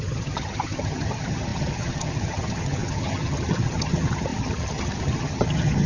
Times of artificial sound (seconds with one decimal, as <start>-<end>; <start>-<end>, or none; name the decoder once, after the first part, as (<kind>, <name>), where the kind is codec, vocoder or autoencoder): 0.0-5.9 (vocoder, HiFi-GAN)